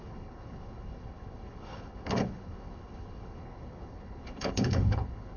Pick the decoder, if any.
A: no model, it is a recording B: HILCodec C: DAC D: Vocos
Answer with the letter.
B